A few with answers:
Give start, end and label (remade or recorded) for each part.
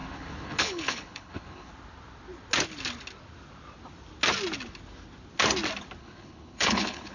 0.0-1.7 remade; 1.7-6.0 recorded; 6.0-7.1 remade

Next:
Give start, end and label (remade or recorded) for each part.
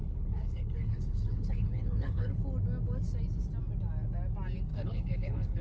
0.0-2.4 remade; 2.4-4.7 recorded; 4.7-5.6 remade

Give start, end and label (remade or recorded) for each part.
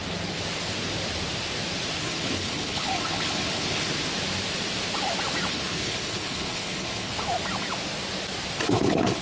0.0-2.0 recorded; 2.0-3.9 remade; 3.9-5.5 recorded; 5.5-7.1 remade; 7.1-8.6 recorded; 8.6-9.2 remade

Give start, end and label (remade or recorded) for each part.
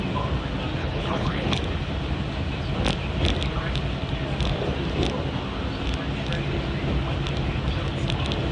0.0-0.8 recorded; 0.8-1.6 remade; 1.6-8.5 recorded